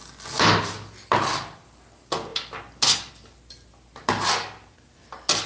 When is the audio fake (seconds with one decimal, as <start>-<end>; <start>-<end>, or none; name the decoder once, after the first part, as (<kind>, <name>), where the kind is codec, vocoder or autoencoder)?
none